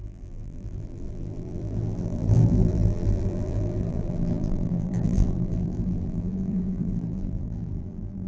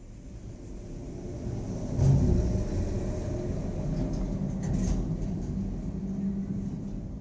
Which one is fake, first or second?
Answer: first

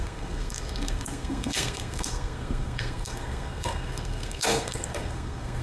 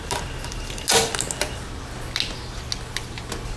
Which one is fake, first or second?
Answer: first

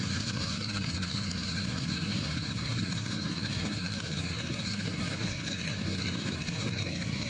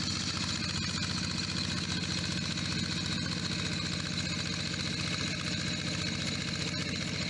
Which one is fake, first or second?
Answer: first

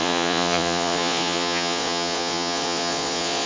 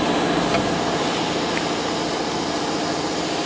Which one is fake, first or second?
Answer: first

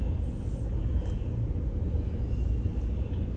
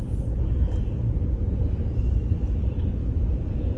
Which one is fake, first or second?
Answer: second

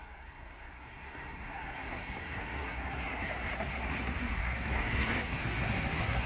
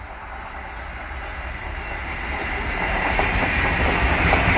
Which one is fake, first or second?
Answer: first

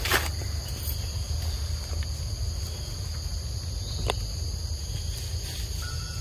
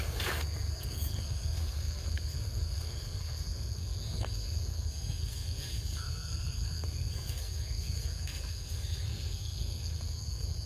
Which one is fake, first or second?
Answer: second